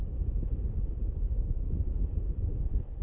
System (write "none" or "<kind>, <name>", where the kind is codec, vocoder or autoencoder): none